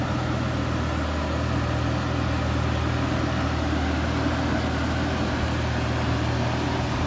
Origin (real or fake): real